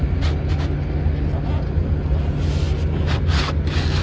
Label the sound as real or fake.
real